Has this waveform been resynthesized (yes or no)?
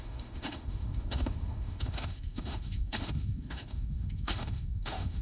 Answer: yes